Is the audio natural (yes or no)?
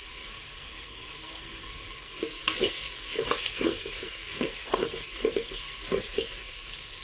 no